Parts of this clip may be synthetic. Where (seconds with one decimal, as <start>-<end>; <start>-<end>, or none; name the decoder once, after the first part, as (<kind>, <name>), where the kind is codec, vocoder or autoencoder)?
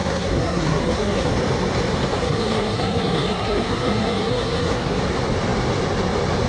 0.0-1.3 (codec, SNAC); 2.2-5.0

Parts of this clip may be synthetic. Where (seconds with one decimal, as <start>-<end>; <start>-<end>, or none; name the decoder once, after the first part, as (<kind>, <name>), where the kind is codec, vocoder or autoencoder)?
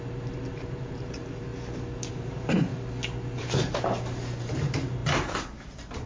0.0-1.5 (vocoder, BigVGAN v2); 2.1-2.7; 3.7-6.1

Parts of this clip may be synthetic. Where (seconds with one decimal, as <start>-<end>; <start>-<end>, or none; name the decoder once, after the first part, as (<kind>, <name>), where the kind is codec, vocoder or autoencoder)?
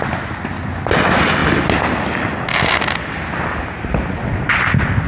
none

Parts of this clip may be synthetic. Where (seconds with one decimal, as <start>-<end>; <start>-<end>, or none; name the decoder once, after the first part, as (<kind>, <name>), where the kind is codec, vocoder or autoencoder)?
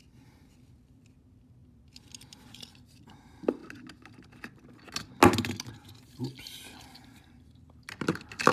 0.0-3.6 (vocoder, BigVGAN v2); 7.3-8.5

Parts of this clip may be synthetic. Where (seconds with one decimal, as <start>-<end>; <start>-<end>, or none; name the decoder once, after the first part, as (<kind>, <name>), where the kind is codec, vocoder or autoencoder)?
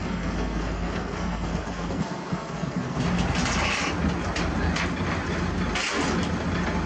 0.0-3.0 (codec, SNAC)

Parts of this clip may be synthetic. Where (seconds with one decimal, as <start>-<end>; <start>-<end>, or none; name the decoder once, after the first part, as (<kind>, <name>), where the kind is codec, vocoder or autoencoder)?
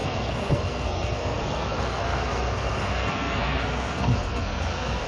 0.0-5.1 (codec, SNAC)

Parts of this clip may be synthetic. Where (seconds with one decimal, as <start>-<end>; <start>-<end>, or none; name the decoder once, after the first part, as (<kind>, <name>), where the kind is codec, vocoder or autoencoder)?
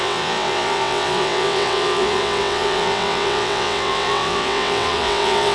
0.0-5.5 (vocoder, WaveNeXt)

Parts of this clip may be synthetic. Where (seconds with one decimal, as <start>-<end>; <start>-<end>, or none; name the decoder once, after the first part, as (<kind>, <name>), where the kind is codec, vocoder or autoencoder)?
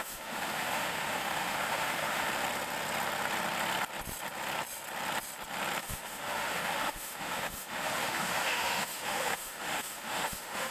0.0-2.3 (autoencoder, DAC-VAE); 5.8-10.7